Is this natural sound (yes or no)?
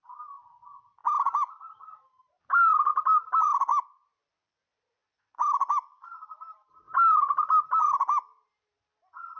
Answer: yes